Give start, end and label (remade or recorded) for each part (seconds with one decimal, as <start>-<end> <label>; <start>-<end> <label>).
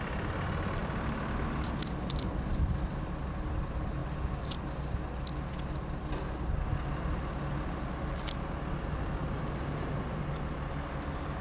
0.0-11.4 recorded